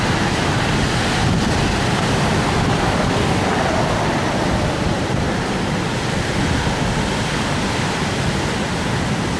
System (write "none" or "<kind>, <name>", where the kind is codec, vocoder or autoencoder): none